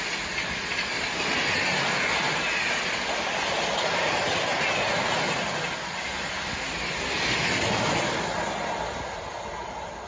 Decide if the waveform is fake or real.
real